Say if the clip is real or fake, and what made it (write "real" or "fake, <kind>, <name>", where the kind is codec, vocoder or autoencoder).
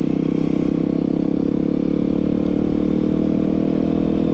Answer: real